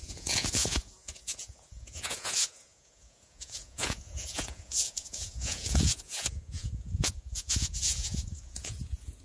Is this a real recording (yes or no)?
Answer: no